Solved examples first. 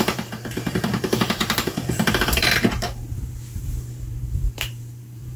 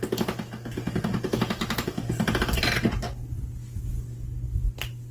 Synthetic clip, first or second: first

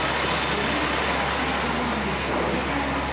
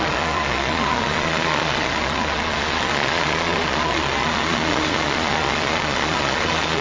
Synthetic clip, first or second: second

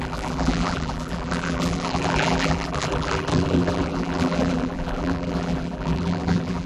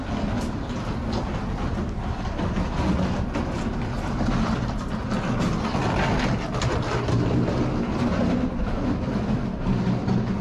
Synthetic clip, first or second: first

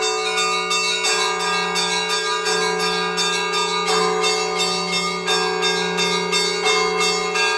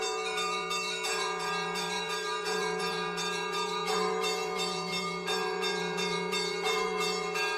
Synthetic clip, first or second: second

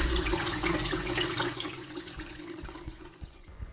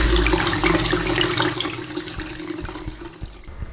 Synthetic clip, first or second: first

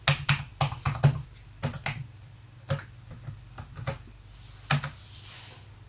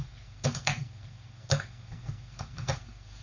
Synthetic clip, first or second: second